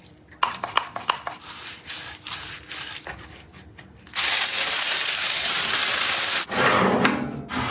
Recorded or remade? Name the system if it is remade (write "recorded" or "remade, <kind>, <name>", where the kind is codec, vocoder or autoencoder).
recorded